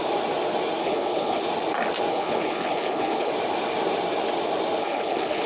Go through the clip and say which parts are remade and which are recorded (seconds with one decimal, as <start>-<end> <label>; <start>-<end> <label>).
0.0-0.8 recorded; 0.8-1.4 remade; 1.4-2.1 recorded; 2.1-3.3 remade; 3.3-4.8 recorded; 4.8-5.5 remade